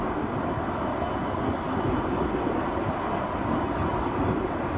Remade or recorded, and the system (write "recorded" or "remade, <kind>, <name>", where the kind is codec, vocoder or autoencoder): recorded